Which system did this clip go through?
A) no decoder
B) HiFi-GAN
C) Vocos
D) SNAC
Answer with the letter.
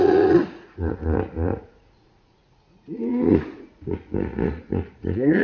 C